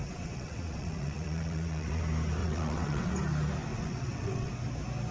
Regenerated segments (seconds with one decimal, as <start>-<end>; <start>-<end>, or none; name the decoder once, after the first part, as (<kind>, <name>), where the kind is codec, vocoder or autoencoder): 0.0-2.0 (vocoder, WaveNeXt); 2.4-3.1; 3.7-4.5